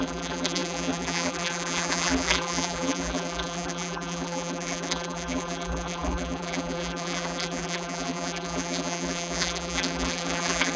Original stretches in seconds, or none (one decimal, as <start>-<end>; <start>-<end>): none